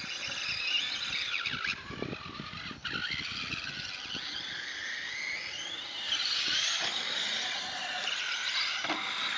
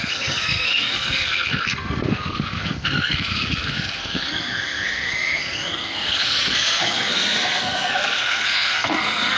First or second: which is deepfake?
second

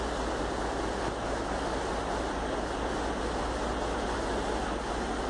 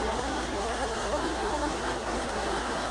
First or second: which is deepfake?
second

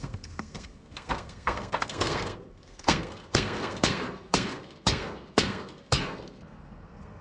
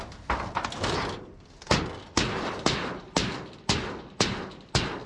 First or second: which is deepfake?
first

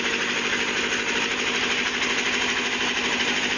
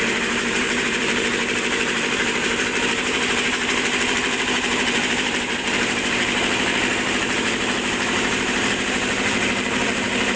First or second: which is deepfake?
second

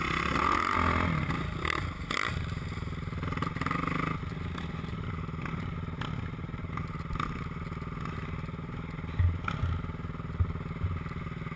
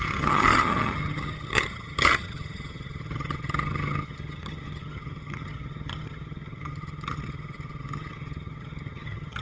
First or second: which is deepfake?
second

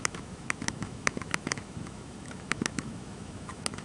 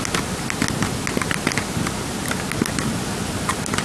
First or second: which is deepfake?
first